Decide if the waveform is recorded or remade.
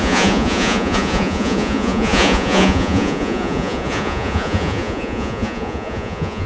remade